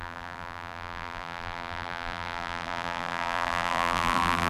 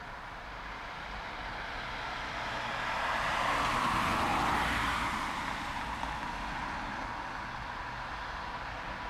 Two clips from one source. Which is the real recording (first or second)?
second